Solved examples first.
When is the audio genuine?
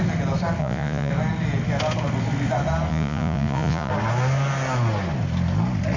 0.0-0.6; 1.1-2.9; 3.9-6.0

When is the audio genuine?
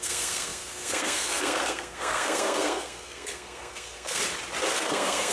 4.2-4.7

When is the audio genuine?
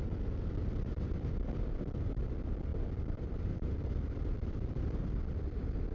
0.0-5.9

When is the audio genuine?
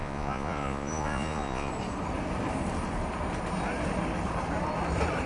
1.7-5.3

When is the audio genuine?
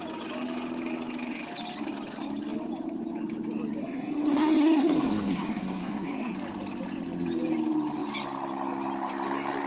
0.0-3.8; 6.3-9.7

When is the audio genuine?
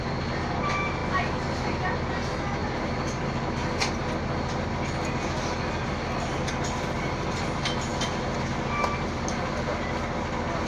0.0-10.7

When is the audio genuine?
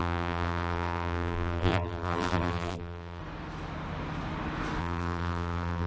3.2-4.8